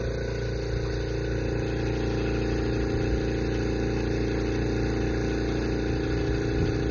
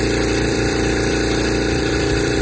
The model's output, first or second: second